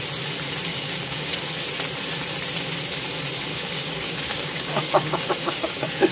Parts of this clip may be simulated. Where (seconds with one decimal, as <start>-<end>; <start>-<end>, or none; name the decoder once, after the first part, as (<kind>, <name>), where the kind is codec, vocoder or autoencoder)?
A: 0.7-1.2 (codec, DAC); 3.5-6.1